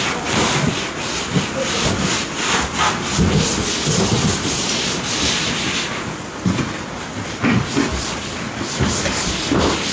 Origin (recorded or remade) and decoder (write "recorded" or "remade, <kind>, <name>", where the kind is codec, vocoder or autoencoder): recorded